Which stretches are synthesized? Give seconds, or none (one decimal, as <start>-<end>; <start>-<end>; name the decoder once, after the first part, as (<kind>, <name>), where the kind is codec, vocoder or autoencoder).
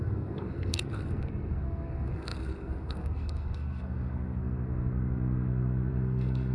0.0-6.5 (codec, SNAC)